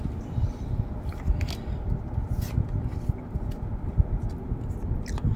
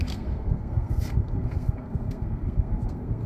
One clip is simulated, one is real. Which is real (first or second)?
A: first